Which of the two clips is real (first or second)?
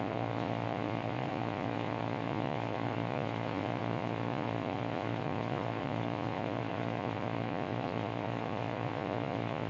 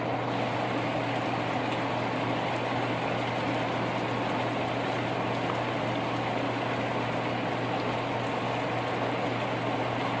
second